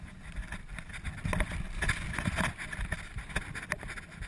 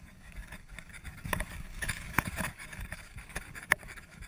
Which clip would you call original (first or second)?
first